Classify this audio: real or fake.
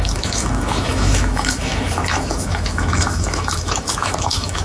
fake